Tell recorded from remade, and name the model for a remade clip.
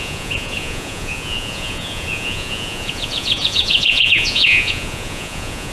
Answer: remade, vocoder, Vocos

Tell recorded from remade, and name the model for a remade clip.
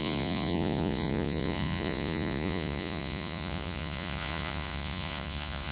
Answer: remade, vocoder, Vocos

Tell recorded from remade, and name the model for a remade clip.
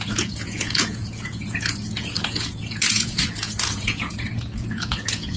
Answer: remade, vocoder, Vocos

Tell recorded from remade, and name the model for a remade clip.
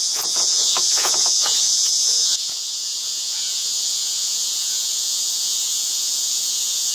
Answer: remade, vocoder, Vocos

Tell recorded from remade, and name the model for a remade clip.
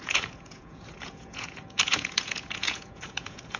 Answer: remade, vocoder, Vocos